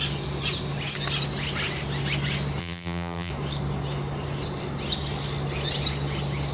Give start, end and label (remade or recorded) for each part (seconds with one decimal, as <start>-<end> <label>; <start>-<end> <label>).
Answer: 0.0-2.6 recorded; 2.6-3.3 remade; 3.3-6.5 recorded